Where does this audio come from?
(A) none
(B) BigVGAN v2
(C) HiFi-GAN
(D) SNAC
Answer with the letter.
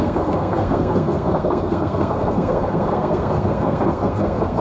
D